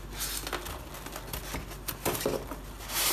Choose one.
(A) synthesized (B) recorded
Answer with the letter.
B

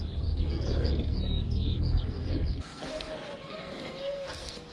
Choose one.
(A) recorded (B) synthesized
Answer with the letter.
B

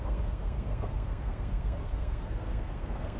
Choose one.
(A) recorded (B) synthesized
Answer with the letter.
B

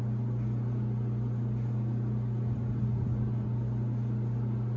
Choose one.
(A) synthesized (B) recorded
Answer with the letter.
B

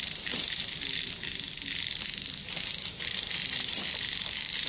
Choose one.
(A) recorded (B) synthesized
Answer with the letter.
A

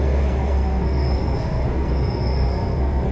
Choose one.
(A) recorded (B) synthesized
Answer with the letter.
B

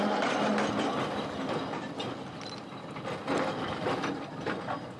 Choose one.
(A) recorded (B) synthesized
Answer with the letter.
A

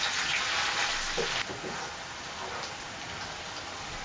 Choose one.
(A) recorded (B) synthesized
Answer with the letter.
A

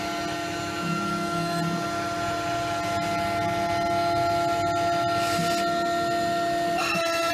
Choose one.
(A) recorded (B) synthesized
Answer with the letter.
A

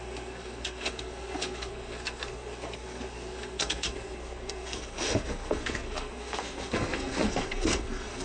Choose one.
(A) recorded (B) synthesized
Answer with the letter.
B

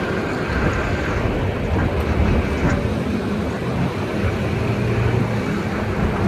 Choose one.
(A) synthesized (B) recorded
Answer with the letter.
B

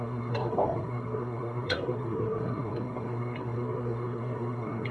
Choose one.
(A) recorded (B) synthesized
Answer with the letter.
B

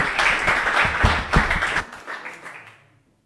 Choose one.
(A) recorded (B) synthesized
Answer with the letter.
A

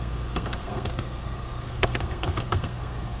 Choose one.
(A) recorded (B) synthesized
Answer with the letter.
B